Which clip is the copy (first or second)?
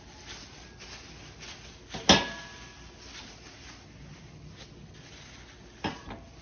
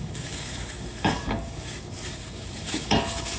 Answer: second